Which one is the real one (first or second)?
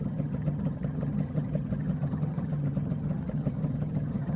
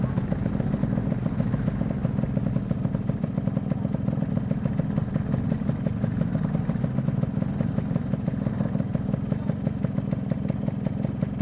second